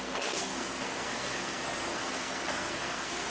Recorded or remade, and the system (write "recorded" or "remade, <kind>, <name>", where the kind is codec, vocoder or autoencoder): remade, codec, SNAC